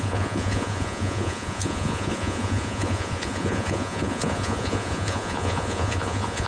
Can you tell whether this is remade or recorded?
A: remade